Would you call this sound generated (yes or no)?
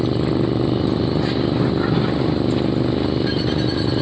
no